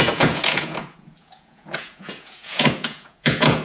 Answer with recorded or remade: remade